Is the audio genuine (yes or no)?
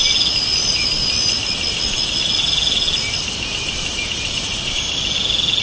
yes